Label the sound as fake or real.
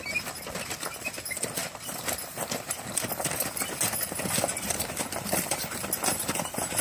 real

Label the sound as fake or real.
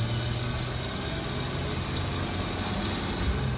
real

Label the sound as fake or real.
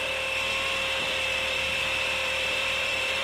fake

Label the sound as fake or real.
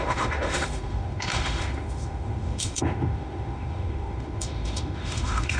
fake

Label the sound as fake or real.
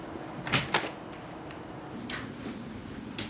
real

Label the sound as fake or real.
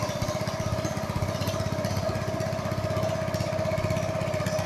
real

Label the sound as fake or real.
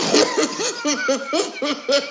real